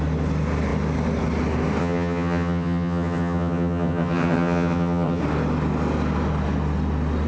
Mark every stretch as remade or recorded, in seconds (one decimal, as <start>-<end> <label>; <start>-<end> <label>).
0.0-1.8 recorded; 1.8-5.2 remade; 5.2-7.3 recorded